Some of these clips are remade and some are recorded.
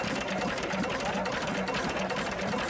recorded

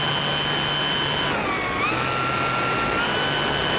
recorded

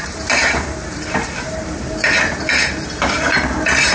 remade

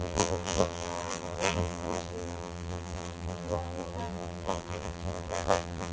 remade